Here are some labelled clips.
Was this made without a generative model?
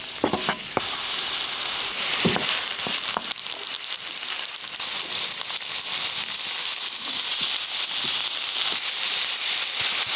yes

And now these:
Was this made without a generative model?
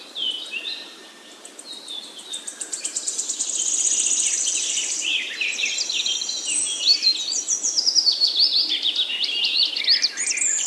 no